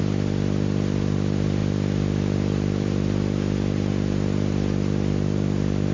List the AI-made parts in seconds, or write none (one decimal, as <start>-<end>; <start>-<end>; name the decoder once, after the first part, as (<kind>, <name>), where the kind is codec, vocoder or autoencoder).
0.0-5.9 (vocoder, BigVGAN v2)